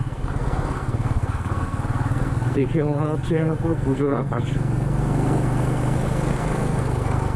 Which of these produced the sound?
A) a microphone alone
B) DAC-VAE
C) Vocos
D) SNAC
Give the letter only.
D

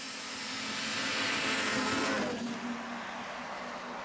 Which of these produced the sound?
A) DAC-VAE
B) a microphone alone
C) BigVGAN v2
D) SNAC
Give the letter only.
B